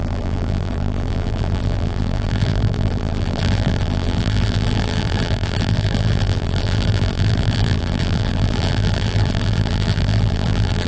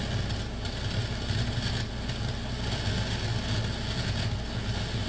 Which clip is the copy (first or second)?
first